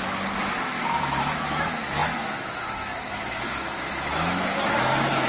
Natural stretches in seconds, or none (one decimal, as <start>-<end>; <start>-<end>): none